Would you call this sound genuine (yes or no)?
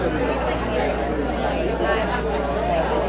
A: yes